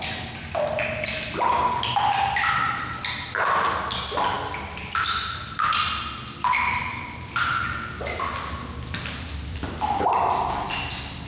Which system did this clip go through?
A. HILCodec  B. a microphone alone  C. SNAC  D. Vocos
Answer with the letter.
B